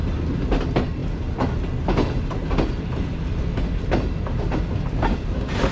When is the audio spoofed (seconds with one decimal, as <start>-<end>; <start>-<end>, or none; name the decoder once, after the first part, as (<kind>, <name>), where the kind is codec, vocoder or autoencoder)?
none